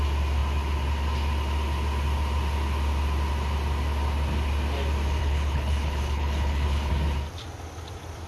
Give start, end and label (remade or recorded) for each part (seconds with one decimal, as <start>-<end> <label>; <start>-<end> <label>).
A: 0.0-5.2 recorded; 5.2-6.9 remade; 6.9-8.3 recorded